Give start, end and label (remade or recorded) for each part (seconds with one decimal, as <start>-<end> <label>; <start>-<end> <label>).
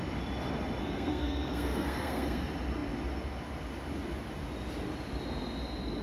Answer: 0.0-0.8 recorded; 0.8-2.4 remade; 2.4-6.0 recorded